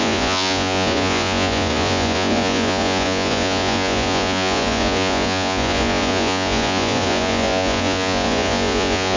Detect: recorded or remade remade